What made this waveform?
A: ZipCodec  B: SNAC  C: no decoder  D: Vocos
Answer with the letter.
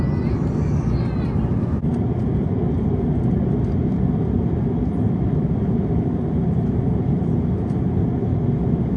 C